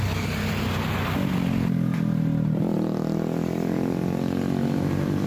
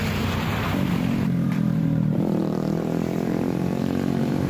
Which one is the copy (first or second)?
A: second